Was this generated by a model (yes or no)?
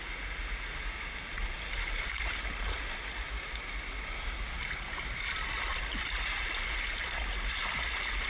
no